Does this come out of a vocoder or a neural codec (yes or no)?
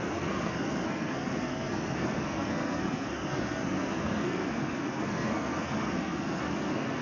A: yes